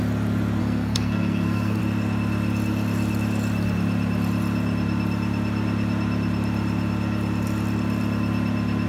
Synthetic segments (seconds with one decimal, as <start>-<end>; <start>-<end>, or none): 0.6-1.8